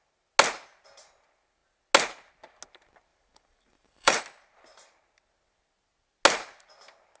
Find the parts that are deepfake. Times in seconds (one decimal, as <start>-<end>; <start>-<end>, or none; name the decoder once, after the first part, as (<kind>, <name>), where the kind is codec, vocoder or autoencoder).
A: 3.1-4.2 (vocoder, BigVGAN v2)